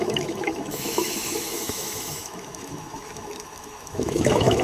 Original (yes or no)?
no